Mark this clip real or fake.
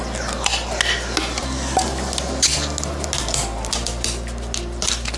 real